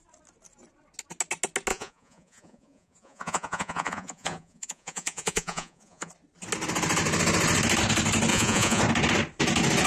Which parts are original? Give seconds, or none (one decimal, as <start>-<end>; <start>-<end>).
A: 0.0-1.7; 6.1-8.3; 8.8-9.9